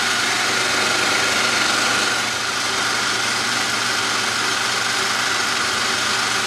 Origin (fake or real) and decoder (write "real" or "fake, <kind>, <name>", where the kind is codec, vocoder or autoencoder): real